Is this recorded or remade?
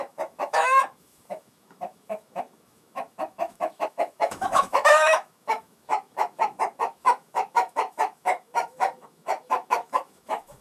remade